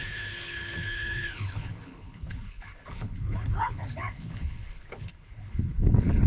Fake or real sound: fake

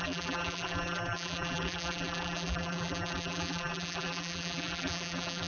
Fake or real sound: fake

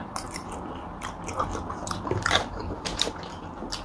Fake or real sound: real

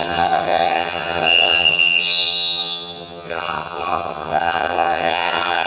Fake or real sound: fake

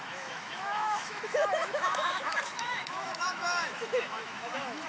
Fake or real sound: fake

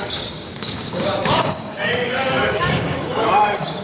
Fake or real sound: fake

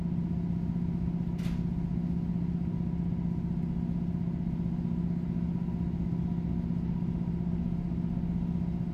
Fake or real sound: real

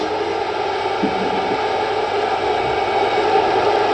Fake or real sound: real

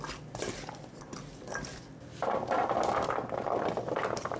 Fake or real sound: real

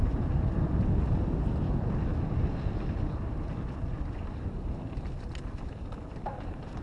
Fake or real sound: real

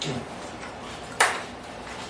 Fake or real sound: fake